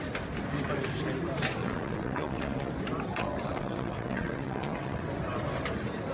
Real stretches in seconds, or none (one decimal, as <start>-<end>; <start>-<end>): 0.0-1.6; 2.7-3.1; 5.0-6.1